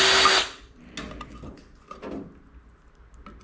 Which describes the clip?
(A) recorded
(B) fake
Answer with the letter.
A